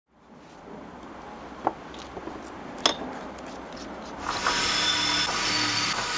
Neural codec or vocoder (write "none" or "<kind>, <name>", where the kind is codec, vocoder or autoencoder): none